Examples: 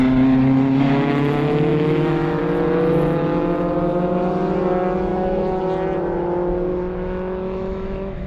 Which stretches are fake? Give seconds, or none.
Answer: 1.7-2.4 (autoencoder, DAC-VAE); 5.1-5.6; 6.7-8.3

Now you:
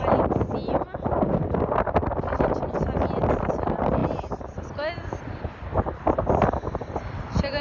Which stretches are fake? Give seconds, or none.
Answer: none

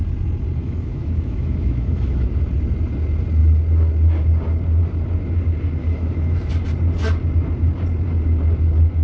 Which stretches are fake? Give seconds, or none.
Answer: 0.6-2.3 (autoencoder, DAC-VAE); 5.8-6.5

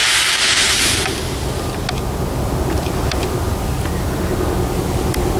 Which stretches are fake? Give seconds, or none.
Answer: none

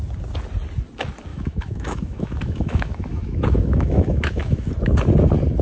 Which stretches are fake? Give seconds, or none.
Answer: 1.3-4.7 (autoencoder, DAC-VAE)